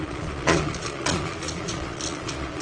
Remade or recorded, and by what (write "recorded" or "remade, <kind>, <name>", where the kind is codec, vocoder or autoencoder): remade, vocoder, Vocos